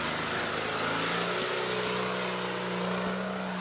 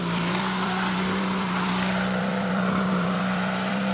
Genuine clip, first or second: first